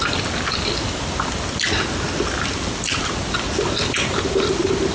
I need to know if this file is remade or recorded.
recorded